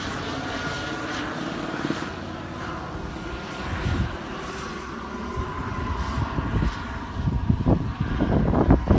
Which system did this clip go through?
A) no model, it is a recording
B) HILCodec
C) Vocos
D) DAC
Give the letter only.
A